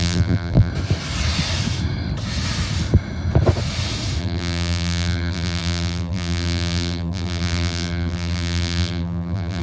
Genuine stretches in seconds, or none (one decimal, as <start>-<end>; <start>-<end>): 0.7-4.2